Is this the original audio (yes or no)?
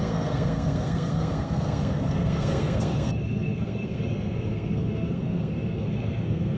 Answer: no